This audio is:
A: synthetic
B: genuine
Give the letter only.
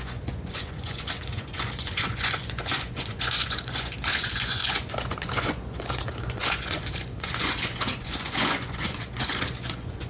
A